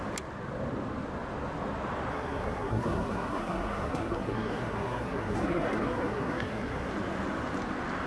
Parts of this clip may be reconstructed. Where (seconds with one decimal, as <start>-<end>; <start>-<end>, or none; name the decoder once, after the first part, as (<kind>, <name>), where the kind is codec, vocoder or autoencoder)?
2.1-6.9 (codec, SNAC)